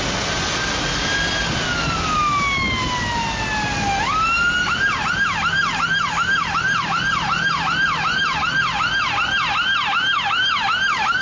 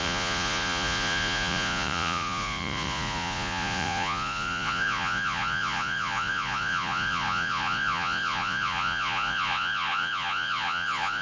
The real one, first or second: first